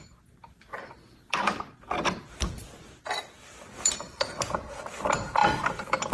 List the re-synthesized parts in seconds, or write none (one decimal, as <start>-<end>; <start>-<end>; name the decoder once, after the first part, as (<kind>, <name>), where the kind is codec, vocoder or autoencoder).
0.7-4.4 (vocoder, BigVGAN v2); 5.4-6.1